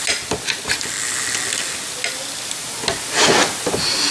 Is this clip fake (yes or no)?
no